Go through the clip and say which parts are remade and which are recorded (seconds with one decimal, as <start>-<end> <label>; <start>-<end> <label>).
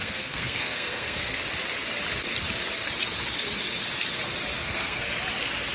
0.0-1.4 remade; 1.4-4.6 recorded; 4.6-5.1 remade; 5.1-5.7 recorded